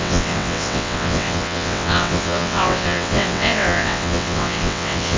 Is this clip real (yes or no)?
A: no